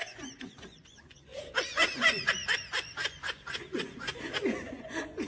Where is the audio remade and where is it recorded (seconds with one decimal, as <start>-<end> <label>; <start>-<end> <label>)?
0.0-5.3 remade